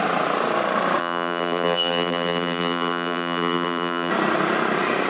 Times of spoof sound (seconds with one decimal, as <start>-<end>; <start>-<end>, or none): 1.0-4.1